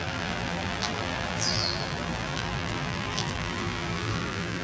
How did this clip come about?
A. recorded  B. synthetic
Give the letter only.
B